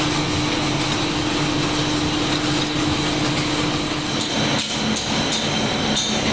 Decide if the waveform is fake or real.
real